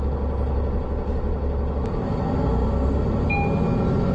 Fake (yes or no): no